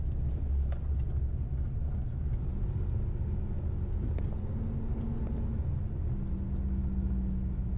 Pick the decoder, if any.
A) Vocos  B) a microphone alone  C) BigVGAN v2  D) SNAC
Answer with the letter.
B